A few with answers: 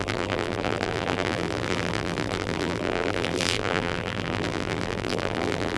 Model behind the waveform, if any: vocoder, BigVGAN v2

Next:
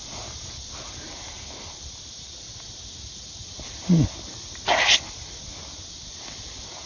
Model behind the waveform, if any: none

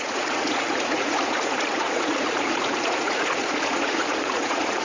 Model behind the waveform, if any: vocoder, Vocos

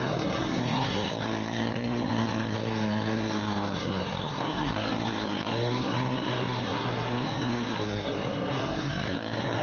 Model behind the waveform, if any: codec, SNAC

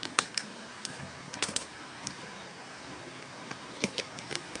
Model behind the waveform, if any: codec, SNAC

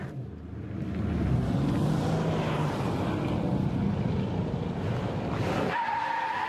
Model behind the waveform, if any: none